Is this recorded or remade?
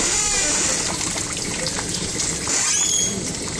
recorded